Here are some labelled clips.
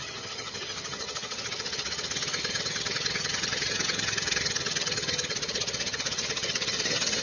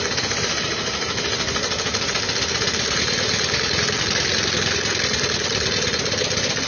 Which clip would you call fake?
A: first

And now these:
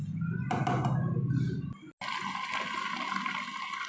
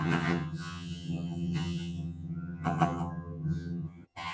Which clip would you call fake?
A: second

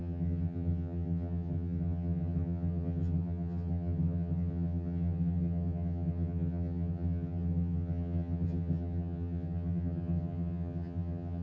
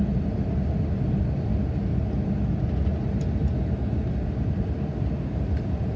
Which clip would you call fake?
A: first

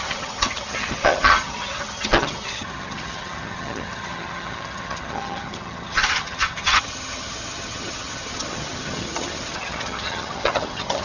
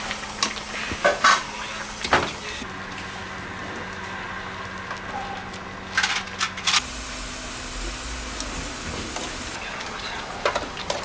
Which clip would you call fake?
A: first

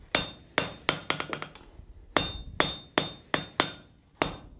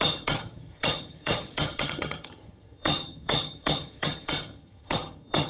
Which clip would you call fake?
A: second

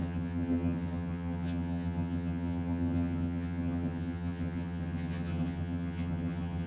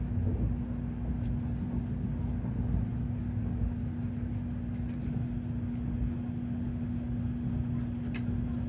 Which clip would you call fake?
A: first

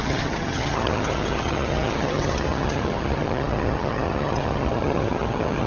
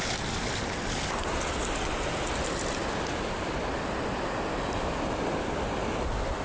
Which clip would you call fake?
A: first